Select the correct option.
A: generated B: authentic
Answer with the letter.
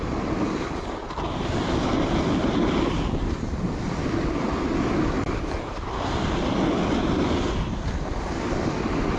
B